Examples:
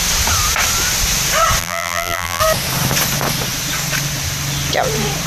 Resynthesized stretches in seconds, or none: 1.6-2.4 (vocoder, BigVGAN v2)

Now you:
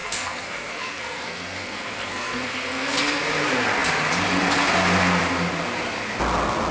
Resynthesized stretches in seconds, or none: 0.0-3.2 (codec, SNAC)

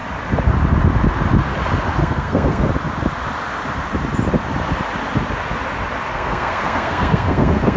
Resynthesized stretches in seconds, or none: 2.0-2.7 (codec, SNAC); 6.1-7.8

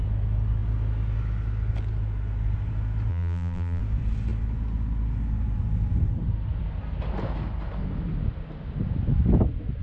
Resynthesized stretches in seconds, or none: 3.1-3.8 (vocoder, BigVGAN v2)